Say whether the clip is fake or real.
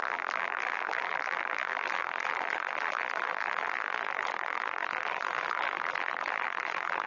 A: fake